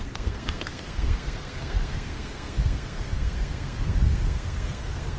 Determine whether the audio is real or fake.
fake